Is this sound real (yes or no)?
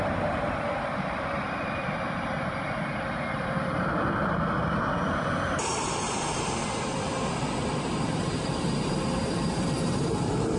no